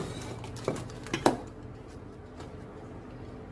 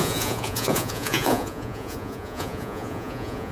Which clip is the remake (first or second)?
second